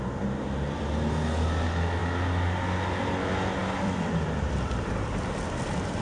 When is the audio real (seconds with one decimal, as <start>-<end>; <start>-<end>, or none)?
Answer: 0.0-3.6; 5.6-6.0